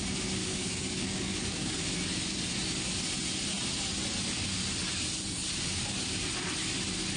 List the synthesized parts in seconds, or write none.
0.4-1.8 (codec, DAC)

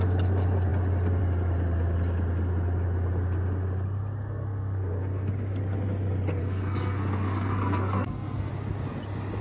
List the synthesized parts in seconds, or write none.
4.2-5.3 (codec, SNAC); 6.4-8.5

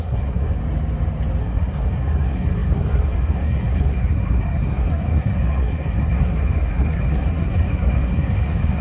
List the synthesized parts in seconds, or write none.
0.0-0.6 (codec, SNAC); 1.4-8.8

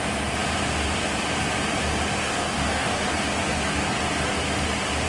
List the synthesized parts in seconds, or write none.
2.2-3.1 (codec, DAC)

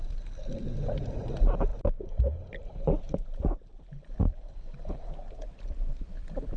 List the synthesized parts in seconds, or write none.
none